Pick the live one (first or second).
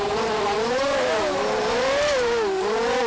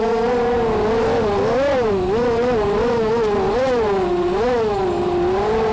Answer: second